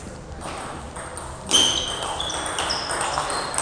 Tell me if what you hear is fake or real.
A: real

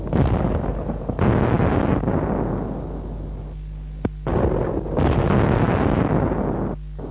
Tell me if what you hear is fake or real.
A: real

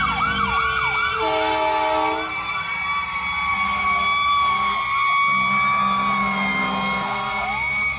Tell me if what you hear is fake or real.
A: real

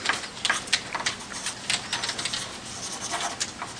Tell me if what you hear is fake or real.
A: real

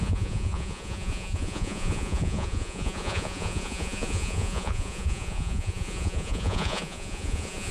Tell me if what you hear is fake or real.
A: fake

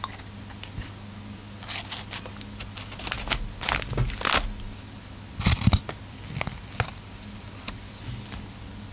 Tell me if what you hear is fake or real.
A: real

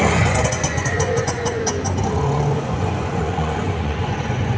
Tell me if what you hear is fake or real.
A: fake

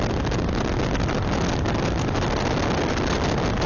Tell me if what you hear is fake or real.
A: real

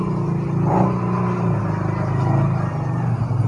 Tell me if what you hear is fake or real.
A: real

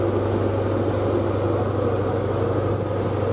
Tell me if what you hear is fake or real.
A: real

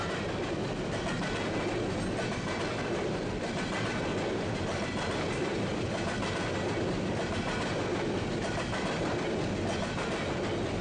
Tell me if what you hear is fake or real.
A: real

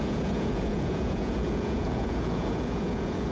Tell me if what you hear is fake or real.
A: fake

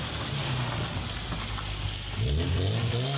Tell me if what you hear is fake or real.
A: real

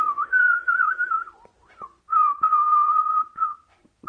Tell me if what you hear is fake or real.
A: fake